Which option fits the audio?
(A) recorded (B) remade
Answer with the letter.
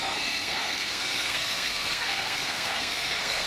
B